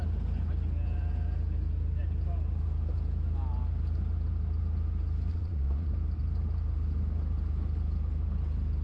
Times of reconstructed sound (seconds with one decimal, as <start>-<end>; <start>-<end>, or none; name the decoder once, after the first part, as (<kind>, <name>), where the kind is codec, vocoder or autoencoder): 5.3-5.9 (vocoder, Vocos)